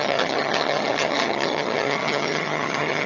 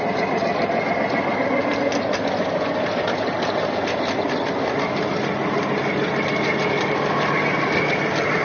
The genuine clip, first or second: second